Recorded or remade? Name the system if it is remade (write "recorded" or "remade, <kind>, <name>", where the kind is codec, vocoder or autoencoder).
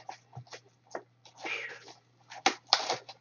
recorded